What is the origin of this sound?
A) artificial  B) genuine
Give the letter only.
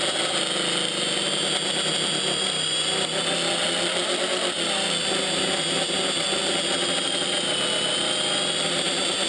B